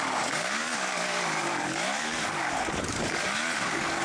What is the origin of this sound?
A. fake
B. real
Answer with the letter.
A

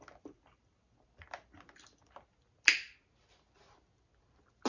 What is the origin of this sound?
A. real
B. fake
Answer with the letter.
A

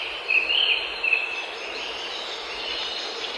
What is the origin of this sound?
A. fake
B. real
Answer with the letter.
B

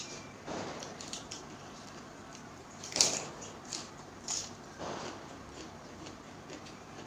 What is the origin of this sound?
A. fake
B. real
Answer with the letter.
A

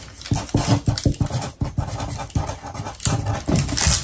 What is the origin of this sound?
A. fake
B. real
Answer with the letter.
B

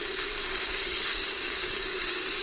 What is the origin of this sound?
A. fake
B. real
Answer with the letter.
A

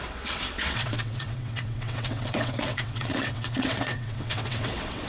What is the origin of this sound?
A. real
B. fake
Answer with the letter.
B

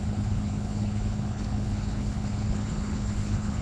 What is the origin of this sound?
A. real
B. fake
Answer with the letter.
B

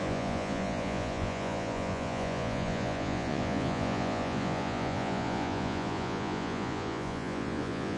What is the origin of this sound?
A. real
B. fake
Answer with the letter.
B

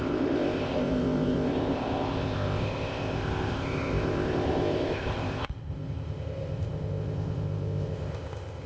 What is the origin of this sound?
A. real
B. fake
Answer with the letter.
B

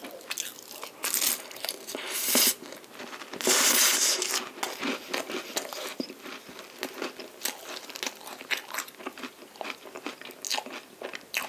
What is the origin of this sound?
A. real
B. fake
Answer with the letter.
A